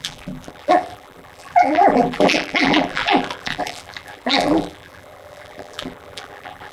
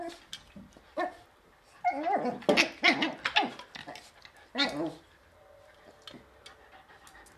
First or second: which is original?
second